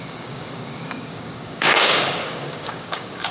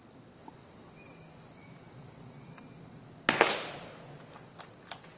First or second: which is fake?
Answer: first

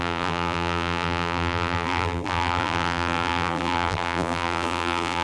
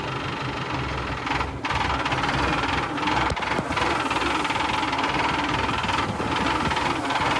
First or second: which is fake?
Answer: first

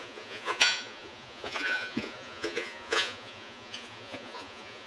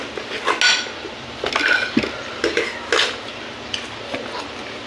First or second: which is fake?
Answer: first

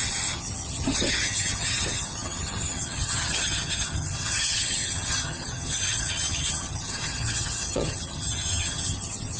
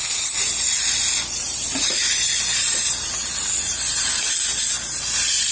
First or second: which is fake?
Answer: first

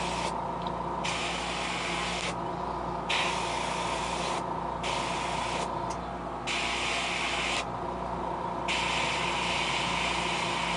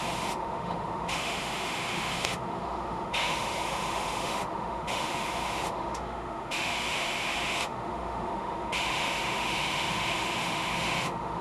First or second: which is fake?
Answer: second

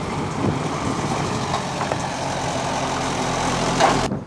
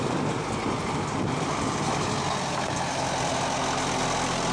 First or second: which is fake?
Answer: first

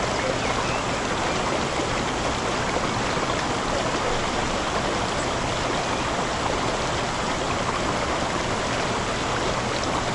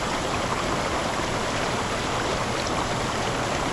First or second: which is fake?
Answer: second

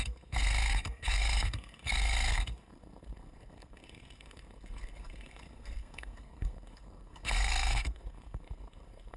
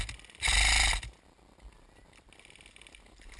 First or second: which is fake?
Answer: first